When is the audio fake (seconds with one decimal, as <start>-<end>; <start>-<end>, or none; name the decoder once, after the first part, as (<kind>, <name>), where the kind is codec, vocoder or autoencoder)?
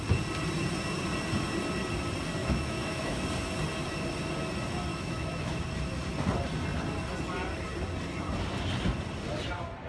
2.4-3.2 (autoencoder, DAC-VAE); 4.9-5.6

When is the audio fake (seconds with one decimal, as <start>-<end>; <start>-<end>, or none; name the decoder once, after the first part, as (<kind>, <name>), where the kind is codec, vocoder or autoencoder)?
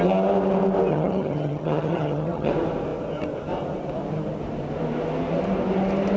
0.9-2.5 (vocoder, HiFi-GAN)